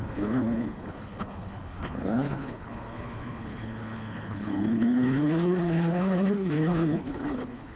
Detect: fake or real fake